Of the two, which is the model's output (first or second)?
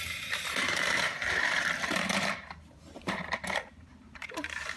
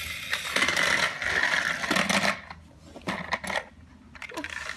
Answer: first